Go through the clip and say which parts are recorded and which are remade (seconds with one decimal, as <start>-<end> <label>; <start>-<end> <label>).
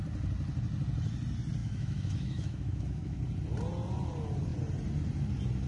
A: 0.0-1.6 recorded; 1.6-3.2 remade; 3.2-5.7 recorded